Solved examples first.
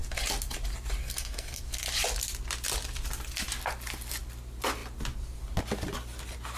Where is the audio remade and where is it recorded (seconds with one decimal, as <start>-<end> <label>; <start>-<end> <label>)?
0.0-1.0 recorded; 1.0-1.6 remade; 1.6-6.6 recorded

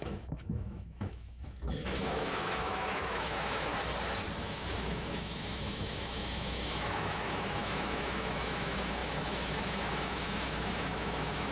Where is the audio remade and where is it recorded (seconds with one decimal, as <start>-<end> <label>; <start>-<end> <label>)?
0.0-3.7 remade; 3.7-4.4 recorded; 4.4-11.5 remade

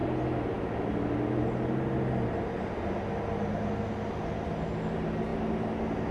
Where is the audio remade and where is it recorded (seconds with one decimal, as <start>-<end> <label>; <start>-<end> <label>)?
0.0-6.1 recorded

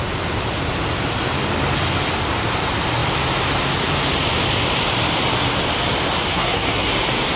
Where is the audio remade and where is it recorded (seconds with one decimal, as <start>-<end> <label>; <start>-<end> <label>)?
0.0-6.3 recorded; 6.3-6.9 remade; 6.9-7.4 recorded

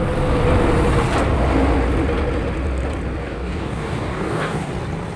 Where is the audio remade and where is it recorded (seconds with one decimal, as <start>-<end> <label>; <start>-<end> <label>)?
0.0-3.2 recorded; 3.2-4.7 remade; 4.7-5.2 recorded